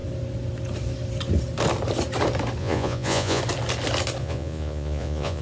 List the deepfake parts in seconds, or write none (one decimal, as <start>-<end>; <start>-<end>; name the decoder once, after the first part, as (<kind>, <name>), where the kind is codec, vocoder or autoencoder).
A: 2.6-3.4 (vocoder, Vocos); 4.2-5.4